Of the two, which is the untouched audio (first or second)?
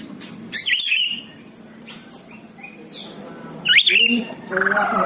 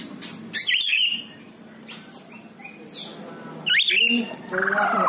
second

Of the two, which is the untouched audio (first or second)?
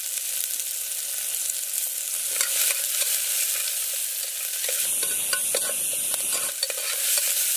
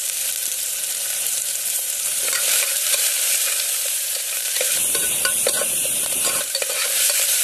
first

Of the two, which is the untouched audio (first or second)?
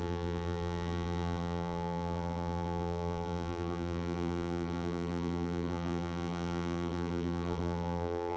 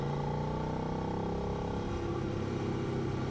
second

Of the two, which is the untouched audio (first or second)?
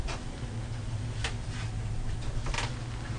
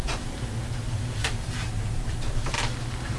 first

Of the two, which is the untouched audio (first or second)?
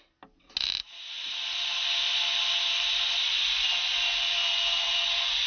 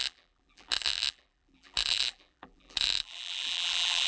first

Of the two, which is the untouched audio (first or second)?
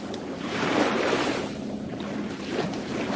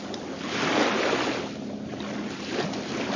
second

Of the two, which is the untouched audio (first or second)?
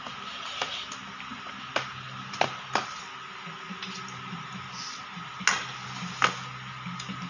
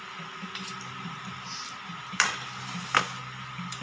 first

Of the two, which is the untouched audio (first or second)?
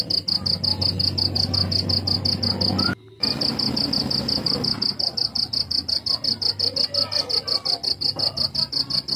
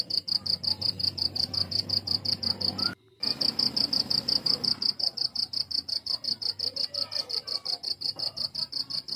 first